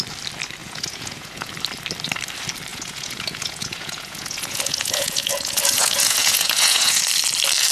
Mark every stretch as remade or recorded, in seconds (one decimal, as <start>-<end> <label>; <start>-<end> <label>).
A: 0.0-0.6 recorded; 0.6-1.5 remade; 1.5-2.7 recorded; 2.7-7.0 remade; 7.0-7.7 recorded